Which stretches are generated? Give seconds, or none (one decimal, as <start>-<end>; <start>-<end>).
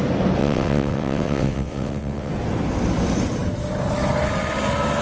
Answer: 0.4-2.3